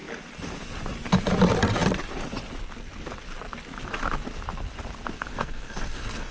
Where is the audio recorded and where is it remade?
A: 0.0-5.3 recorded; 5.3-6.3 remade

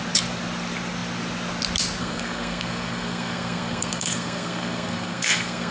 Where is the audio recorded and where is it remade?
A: 0.0-2.0 recorded; 2.0-5.7 remade

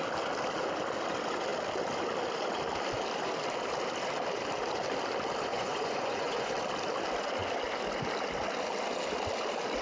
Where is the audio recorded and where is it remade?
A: 0.0-5.5 recorded; 5.5-6.5 remade; 6.5-9.8 recorded

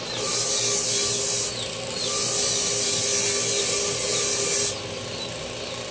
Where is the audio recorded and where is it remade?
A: 0.0-5.9 recorded

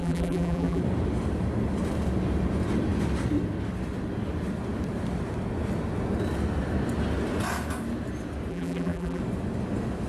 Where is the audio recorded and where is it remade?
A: 0.0-0.8 remade; 0.8-8.5 recorded; 8.5-9.2 remade; 9.2-10.1 recorded

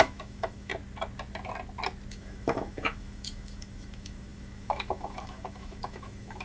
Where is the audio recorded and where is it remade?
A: 0.0-0.7 remade; 0.7-2.1 recorded; 2.1-6.4 remade

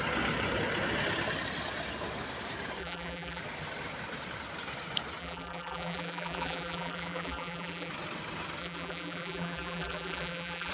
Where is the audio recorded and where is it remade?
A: 0.0-2.8 recorded; 2.8-3.4 remade; 3.4-5.2 recorded; 5.2-7.9 remade; 7.9-8.6 recorded; 8.6-10.7 remade